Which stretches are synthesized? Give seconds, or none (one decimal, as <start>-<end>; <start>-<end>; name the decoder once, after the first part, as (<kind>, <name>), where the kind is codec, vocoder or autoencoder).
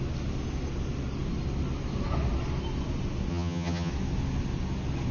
3.3-3.9 (vocoder, HiFi-GAN)